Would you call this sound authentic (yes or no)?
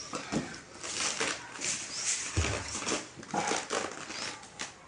yes